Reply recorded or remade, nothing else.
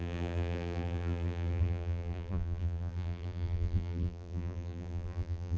remade